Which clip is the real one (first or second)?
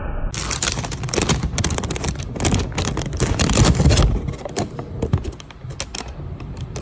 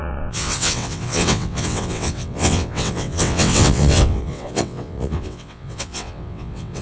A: first